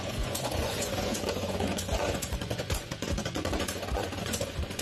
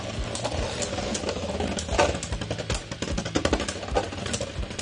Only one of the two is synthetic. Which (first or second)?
first